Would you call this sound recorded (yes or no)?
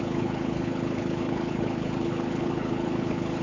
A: no